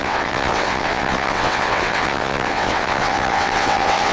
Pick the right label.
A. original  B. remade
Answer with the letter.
B